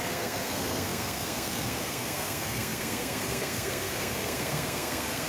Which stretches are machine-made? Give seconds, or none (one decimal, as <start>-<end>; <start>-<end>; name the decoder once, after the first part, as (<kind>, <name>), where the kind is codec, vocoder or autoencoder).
0.0-5.3 (codec, SNAC)